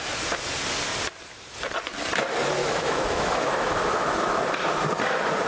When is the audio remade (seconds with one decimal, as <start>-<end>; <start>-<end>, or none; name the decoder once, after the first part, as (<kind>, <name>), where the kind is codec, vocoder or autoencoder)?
2.6-4.4 (autoencoder, DAC-VAE)